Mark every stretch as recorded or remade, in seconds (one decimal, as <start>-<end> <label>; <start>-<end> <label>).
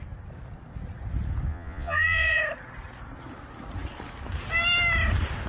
0.0-1.5 recorded; 1.5-2.4 remade; 2.4-5.5 recorded